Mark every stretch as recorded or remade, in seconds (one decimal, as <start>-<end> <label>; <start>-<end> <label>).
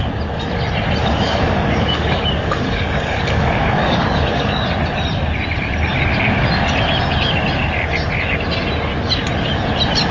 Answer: 0.0-1.0 recorded; 1.0-4.6 remade; 4.6-10.1 recorded